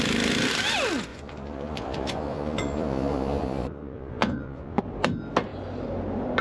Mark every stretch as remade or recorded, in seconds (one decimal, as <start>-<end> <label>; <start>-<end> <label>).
0.0-1.1 recorded; 1.1-4.8 remade; 4.8-6.4 recorded